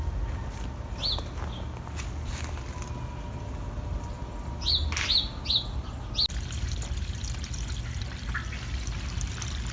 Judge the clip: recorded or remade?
recorded